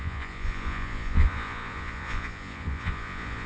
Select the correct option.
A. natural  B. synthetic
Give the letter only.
B